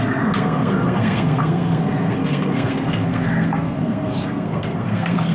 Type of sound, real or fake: fake